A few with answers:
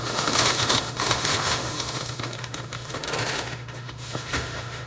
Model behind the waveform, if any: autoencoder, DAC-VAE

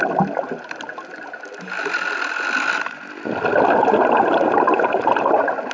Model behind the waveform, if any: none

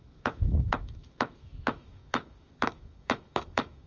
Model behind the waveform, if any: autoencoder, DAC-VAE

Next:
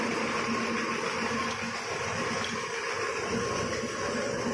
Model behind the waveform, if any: none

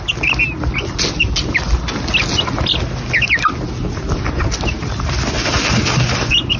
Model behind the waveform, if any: none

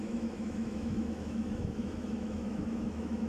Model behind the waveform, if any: autoencoder, DAC-VAE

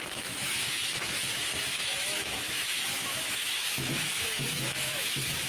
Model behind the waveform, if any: autoencoder, DAC-VAE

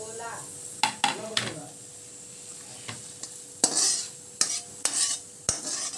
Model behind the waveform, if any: none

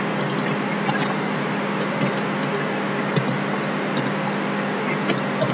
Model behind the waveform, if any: none